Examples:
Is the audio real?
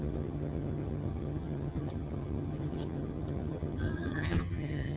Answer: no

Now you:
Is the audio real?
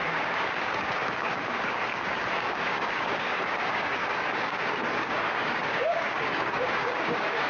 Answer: no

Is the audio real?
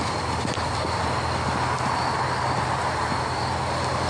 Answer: no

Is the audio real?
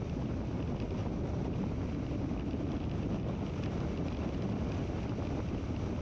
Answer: yes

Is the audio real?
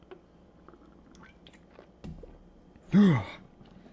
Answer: yes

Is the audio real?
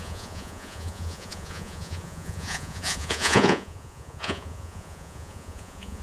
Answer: no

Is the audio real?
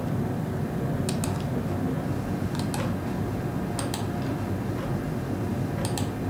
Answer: yes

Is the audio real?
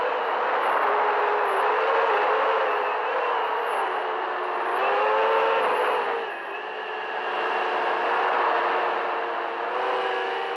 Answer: yes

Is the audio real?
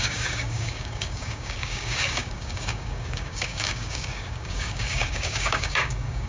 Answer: no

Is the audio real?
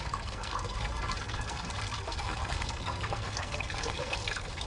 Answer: no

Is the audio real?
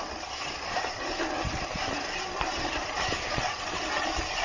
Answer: yes